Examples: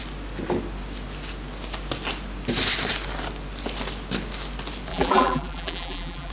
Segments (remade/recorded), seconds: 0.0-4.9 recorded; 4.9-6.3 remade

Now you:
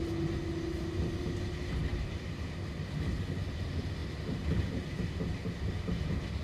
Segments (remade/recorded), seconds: 0.0-1.9 recorded; 1.9-2.6 remade; 2.6-6.4 recorded

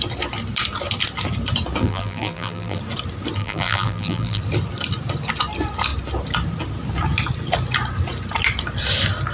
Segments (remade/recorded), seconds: 0.0-1.8 recorded; 1.8-2.8 remade; 2.8-3.4 recorded; 3.4-4.4 remade; 4.4-9.3 recorded

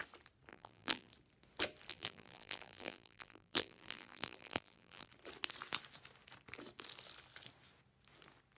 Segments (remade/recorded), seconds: 0.0-0.5 recorded; 0.5-1.1 remade; 1.1-1.9 recorded; 1.9-5.1 remade; 5.1-8.6 recorded

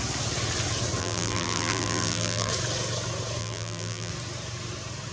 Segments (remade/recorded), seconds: 0.0-1.0 recorded; 1.0-2.5 remade; 2.5-3.4 recorded; 3.4-4.1 remade; 4.1-5.1 recorded

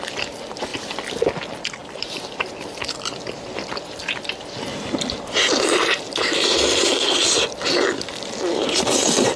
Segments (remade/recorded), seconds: 0.0-1.8 recorded; 1.8-2.5 remade; 2.5-4.7 recorded; 4.7-7.2 remade; 7.2-9.4 recorded

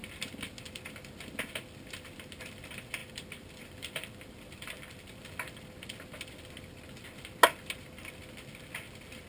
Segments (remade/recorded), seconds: 0.0-3.0 recorded; 3.0-5.2 remade; 5.2-9.3 recorded

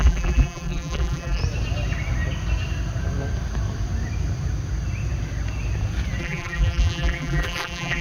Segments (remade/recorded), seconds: 0.0-1.4 remade; 1.4-6.2 recorded; 6.2-8.0 remade